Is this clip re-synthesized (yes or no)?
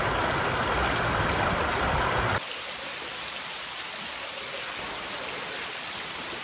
no